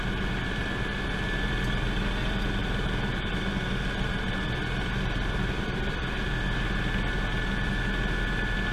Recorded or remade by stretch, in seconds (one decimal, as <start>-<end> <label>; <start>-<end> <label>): 0.0-8.7 recorded